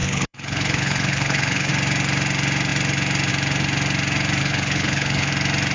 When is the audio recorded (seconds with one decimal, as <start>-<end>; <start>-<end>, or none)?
1.7-4.4; 5.3-5.7